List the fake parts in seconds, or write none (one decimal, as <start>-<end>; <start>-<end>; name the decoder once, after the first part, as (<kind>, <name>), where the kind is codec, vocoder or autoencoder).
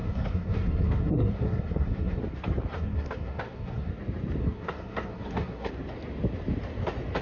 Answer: 0.0-2.2 (codec, SNAC); 2.7-3.9; 4.4-5.7